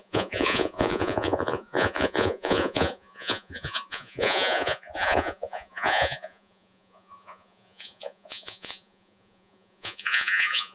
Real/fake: fake